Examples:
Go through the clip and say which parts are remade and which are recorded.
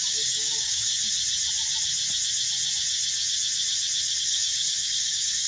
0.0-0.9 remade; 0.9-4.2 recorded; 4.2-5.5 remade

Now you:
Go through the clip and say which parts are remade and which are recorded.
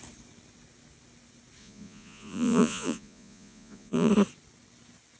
0.0-1.6 recorded; 1.6-4.1 remade; 4.1-5.2 recorded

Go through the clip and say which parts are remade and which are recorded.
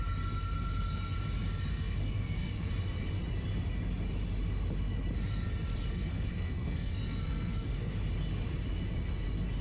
0.0-1.7 recorded; 1.7-2.7 remade; 2.7-5.9 recorded; 5.9-7.9 remade; 7.9-9.6 recorded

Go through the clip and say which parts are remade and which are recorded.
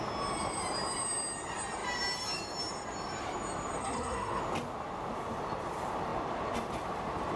0.0-3.8 recorded; 3.8-4.4 remade; 4.4-7.4 recorded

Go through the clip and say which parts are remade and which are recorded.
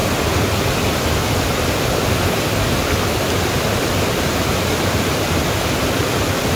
0.0-6.6 recorded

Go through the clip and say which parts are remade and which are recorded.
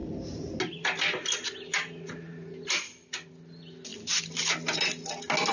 0.0-5.5 recorded